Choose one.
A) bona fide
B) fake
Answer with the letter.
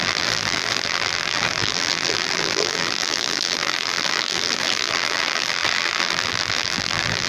B